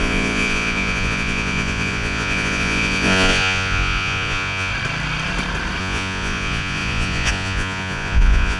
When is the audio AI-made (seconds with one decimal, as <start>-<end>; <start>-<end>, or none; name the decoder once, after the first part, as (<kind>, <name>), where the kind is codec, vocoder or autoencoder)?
0.0-4.7 (vocoder, Vocos); 5.8-8.6